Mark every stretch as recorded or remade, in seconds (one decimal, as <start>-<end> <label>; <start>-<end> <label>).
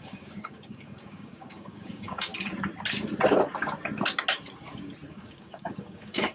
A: 0.0-2.3 remade; 2.3-5.1 recorded; 5.1-6.3 remade